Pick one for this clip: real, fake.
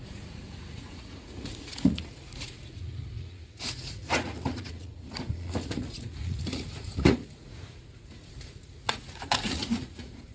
fake